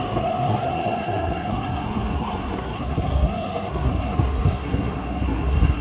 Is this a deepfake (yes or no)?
yes